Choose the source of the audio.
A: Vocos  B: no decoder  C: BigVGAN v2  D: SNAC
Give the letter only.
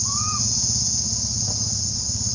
A